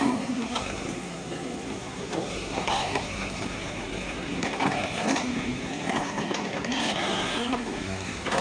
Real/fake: fake